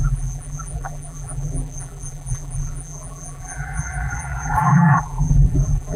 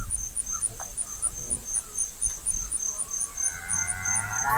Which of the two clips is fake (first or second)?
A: first